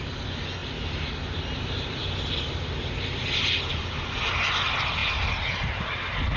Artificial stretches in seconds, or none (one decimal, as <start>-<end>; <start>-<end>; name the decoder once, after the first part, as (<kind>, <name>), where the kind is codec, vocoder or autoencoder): none